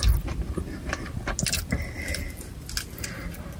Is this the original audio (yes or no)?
yes